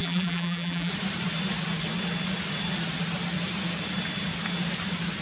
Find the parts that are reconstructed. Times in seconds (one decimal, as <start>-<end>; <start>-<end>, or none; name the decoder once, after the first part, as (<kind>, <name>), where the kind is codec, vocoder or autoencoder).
0.0-0.9 (vocoder, BigVGAN v2)